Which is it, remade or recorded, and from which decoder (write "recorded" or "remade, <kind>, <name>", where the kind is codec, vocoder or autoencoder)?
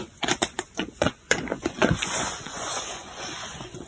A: remade, vocoder, Vocos